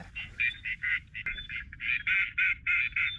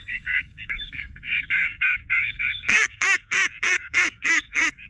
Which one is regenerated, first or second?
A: second